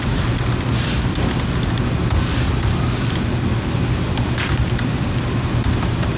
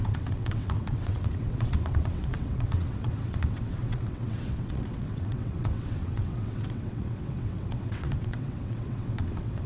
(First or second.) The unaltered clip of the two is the first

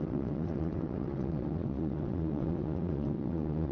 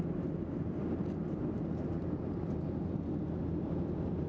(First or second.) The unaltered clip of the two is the second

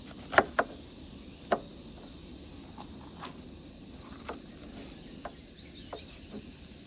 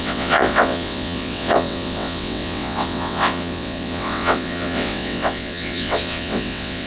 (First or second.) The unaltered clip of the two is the first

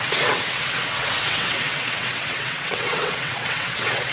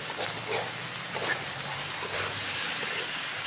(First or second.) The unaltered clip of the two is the second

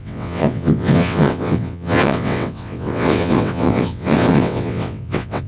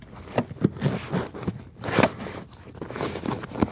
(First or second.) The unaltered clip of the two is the second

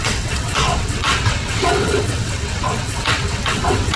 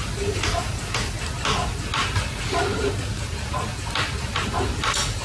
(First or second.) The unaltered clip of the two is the second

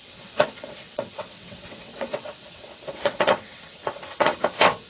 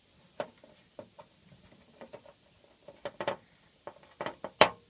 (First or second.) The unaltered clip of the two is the second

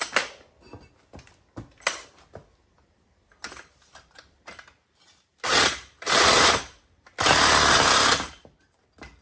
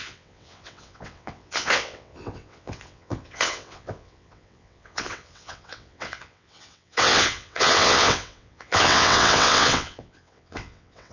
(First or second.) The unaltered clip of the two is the first